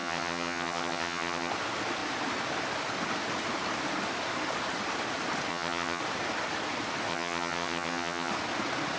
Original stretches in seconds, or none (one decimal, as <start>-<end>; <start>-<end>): 1.5-5.5; 6.0-7.1; 8.3-9.0